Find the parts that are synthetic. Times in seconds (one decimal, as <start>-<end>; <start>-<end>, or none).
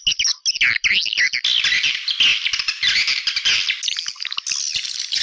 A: none